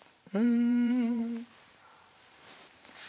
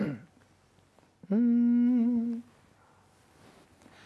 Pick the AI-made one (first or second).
first